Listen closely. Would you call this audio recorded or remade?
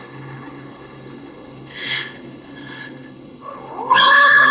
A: remade